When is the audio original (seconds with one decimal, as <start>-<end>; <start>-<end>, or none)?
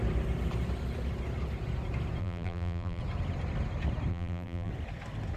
0.0-2.2; 3.0-4.1; 4.7-5.4